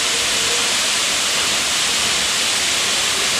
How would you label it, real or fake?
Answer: fake